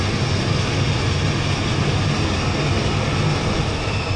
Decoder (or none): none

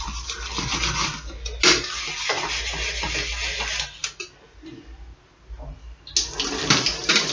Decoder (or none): none